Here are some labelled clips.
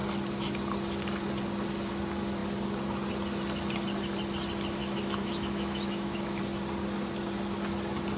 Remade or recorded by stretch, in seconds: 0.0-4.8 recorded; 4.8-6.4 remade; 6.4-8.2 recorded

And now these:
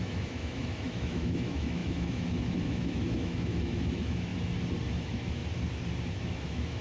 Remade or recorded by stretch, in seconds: 0.0-4.3 remade; 4.3-5.0 recorded; 5.0-5.4 remade; 5.4-6.1 recorded; 6.1-6.8 remade

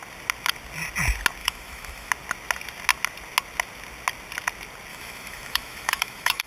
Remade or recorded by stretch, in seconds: 0.0-1.4 recorded; 1.4-2.1 remade; 2.1-4.9 recorded; 4.9-6.5 remade

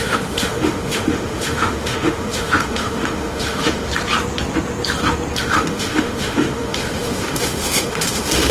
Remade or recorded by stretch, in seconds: 0.0-3.9 remade; 3.9-5.4 recorded; 5.4-8.5 remade